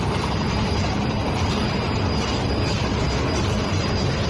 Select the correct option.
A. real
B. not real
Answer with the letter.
B